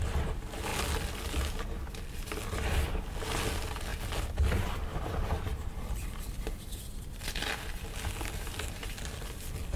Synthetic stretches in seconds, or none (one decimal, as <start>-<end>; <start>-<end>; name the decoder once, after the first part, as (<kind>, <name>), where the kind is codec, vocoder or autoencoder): none